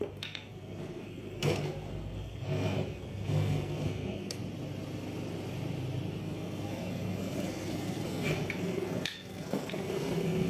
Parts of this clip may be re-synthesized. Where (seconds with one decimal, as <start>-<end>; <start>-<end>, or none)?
0.0-4.4; 6.2-10.5